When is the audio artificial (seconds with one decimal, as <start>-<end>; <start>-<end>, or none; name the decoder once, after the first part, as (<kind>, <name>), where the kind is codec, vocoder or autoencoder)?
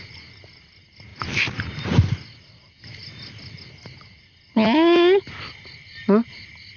none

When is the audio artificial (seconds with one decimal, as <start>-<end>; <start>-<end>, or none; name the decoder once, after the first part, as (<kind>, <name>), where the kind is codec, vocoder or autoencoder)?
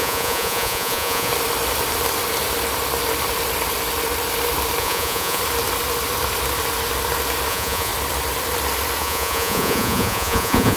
0.0-1.3 (vocoder, Vocos); 4.8-5.4; 7.5-7.9; 9.0-10.8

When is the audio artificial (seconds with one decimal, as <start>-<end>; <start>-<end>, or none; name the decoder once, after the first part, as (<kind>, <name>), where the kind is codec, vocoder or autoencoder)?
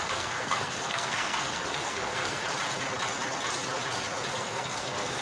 0.0-2.4 (codec, SNAC); 4.3-5.2